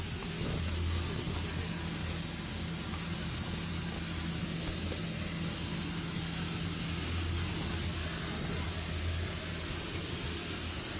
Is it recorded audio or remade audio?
recorded